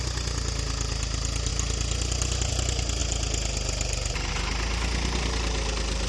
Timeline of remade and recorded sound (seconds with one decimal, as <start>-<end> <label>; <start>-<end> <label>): 0.0-6.1 recorded